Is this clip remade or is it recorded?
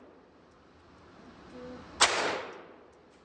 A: recorded